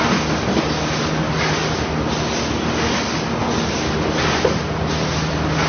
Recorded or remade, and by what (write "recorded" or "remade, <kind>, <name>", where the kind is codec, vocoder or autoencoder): recorded